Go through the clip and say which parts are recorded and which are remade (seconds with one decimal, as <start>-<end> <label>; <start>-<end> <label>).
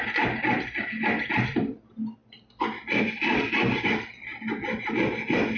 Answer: 0.0-5.6 recorded